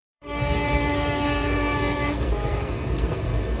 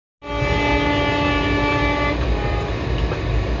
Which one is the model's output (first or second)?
first